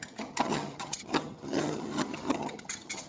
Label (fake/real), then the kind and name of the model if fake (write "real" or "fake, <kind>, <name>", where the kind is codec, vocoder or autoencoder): fake, vocoder, HiFi-GAN